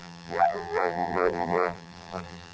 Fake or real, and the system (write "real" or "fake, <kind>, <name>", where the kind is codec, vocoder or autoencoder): fake, vocoder, BigVGAN v2